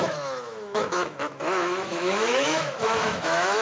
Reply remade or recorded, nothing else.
remade